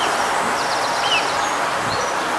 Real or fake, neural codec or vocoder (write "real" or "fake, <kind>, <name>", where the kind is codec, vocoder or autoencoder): real